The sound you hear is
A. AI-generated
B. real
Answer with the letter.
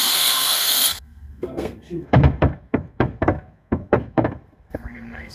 A